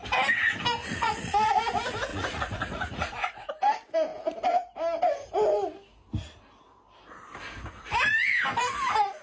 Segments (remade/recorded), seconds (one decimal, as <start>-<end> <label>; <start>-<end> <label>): 0.0-0.8 recorded; 0.8-1.6 remade; 1.6-2.1 recorded; 2.1-3.5 remade; 3.5-9.2 recorded

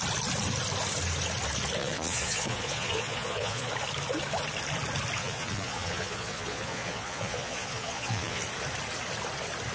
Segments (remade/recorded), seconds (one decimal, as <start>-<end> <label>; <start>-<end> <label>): 0.0-1.8 recorded; 1.8-3.7 remade; 3.7-5.2 recorded; 5.2-8.4 remade; 8.4-9.7 recorded